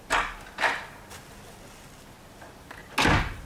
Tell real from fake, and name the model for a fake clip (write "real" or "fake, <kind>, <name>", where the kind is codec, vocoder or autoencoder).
real